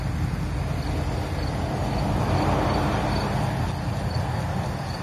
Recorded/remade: recorded